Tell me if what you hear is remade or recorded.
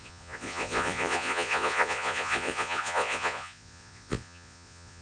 remade